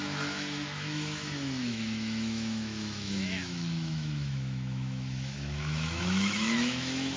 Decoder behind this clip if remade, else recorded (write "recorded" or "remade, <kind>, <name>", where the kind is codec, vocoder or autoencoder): remade, autoencoder, DAC-VAE